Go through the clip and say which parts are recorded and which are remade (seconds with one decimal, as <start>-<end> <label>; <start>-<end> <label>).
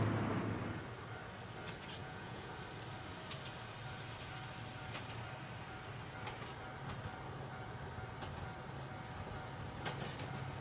0.0-2.0 recorded; 2.0-2.5 remade; 2.5-10.6 recorded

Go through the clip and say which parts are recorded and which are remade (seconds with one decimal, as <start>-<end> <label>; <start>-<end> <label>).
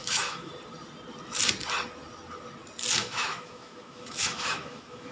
0.0-0.5 remade; 0.5-3.0 recorded; 3.0-5.1 remade